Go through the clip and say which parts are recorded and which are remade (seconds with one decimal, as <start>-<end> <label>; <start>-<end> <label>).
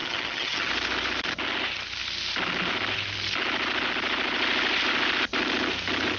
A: 0.0-0.7 remade; 0.7-6.2 recorded